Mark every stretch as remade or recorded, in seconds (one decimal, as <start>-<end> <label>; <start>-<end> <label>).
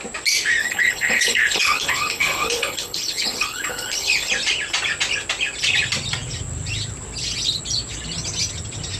0.0-0.6 recorded; 0.6-4.3 remade; 4.3-9.0 recorded